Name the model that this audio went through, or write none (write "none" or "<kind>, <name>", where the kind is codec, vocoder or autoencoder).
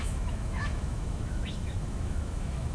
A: autoencoder, DAC-VAE